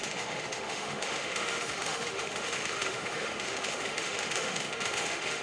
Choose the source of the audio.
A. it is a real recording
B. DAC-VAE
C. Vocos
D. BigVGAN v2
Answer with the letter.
B